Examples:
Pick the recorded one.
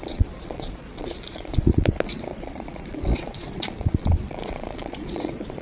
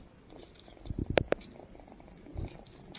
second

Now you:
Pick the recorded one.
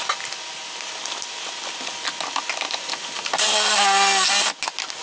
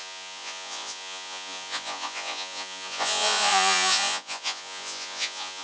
first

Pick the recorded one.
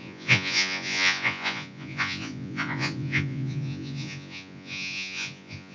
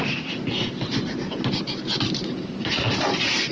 second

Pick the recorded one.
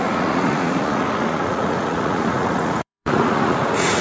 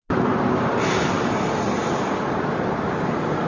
second